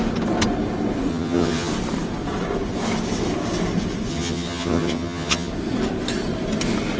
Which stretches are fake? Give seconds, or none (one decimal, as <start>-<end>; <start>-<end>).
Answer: 1.1-1.7; 4.1-5.5